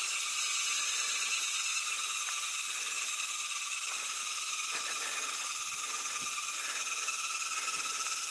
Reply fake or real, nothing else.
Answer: real